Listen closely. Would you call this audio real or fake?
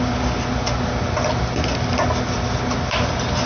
real